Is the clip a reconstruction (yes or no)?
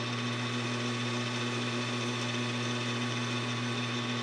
no